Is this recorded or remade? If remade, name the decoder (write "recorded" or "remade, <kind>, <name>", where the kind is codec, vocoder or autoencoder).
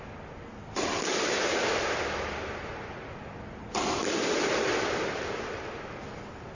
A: recorded